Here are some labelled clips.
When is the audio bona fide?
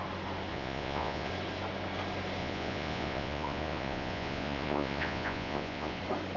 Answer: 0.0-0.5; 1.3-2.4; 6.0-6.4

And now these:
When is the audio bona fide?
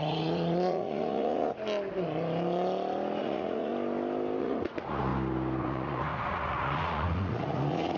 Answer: 1.5-3.2; 3.7-4.4; 5.1-5.6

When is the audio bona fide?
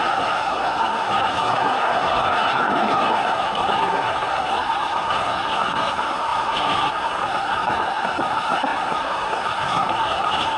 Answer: none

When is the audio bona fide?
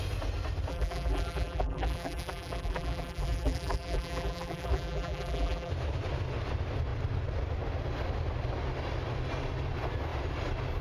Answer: 0.0-0.7; 5.7-10.8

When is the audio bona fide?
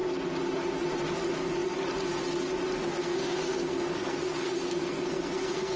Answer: 0.0-3.0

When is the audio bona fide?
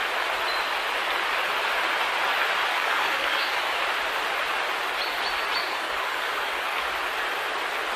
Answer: 0.0-2.7; 3.8-5.6; 6.9-8.0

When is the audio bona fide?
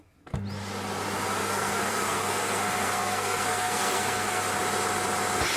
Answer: 0.0-1.4; 4.4-5.6